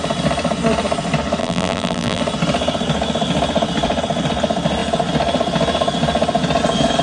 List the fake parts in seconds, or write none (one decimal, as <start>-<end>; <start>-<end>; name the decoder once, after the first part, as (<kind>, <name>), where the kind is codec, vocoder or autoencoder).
1.4-2.2 (vocoder, BigVGAN v2)